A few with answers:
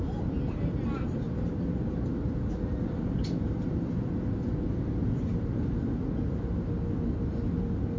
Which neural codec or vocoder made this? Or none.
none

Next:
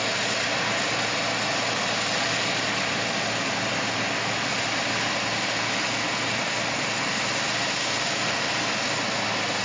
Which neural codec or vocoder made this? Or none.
none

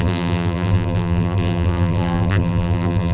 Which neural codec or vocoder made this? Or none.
vocoder, BigVGAN v2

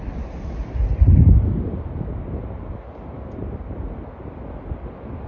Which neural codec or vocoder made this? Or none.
none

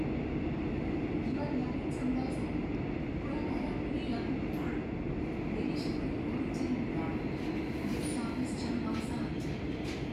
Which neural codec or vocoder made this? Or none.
none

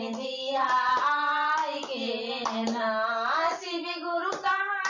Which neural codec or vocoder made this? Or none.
none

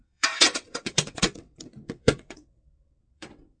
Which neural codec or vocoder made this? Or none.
vocoder, WaveNeXt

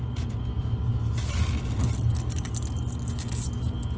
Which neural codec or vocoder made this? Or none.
none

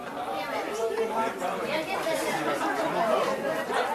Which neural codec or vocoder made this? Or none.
none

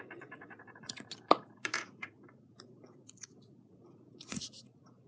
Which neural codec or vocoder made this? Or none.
vocoder, Vocos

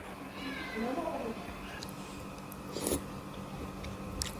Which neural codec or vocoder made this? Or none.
none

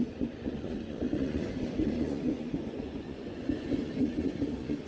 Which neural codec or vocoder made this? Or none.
vocoder, Vocos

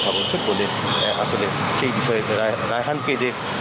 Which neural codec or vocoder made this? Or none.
codec, DAC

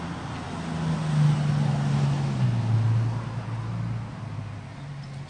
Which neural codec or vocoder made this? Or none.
none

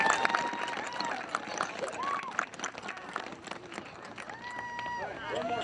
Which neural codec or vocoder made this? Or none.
none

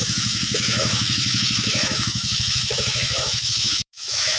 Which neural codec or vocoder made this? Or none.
autoencoder, DAC-VAE